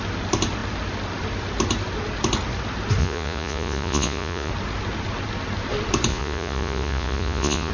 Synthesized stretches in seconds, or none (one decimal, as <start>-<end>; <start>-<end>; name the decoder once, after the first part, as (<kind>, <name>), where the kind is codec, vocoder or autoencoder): 3.0-4.5 (vocoder, Vocos); 6.1-7.7